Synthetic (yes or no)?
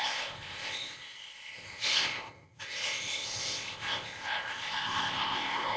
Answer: yes